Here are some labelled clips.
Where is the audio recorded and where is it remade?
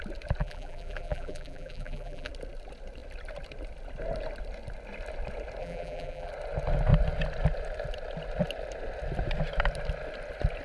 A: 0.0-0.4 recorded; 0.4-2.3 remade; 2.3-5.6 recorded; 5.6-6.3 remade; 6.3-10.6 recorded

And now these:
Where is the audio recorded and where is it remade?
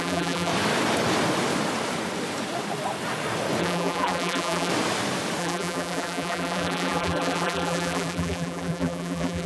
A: 0.0-0.5 remade; 0.5-3.6 recorded; 3.6-4.7 remade; 4.7-5.4 recorded; 5.4-9.5 remade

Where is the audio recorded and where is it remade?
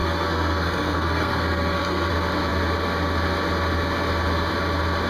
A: 0.0-2.1 remade; 2.1-5.1 recorded